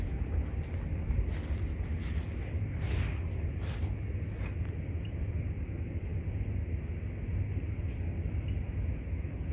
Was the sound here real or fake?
real